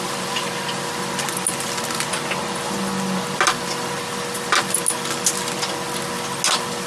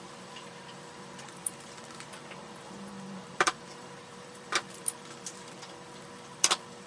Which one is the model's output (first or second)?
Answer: second